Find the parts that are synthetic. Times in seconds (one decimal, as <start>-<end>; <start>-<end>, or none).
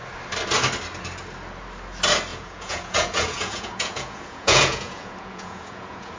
2.3-6.2